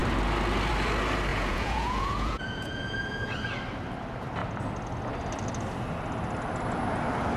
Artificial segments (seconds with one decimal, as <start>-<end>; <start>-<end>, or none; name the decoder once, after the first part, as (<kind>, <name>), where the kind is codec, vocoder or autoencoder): 1.3-3.3 (vocoder, Vocos)